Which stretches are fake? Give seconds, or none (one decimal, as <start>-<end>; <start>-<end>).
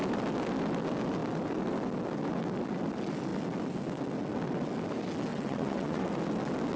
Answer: 5.3-6.1